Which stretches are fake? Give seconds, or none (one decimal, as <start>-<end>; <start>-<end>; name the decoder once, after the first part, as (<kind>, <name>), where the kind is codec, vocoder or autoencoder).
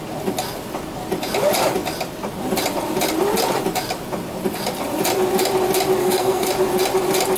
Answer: 6.0-6.5 (codec, SNAC)